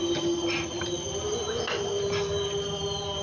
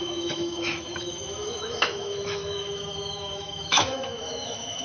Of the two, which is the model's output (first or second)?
second